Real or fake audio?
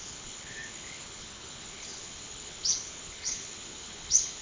fake